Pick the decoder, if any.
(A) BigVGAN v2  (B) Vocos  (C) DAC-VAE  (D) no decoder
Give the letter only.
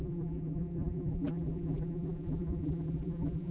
A